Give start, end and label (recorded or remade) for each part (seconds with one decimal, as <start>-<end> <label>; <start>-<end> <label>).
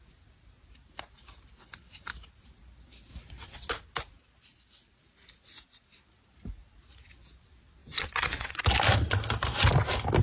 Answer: 0.0-3.1 recorded; 3.1-3.7 remade; 3.7-7.8 recorded; 7.8-8.6 remade; 8.6-10.2 recorded